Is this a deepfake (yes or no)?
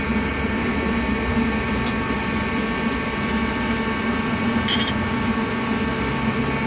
no